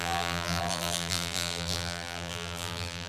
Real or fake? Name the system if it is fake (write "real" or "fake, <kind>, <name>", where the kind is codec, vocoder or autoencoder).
fake, vocoder, BigVGAN v2